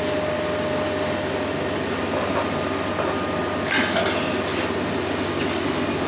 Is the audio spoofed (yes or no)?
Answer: no